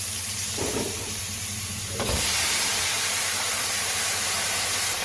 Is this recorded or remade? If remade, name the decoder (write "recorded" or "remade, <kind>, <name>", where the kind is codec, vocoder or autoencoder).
remade, vocoder, BigVGAN v2